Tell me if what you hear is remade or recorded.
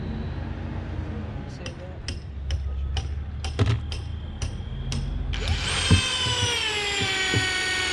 recorded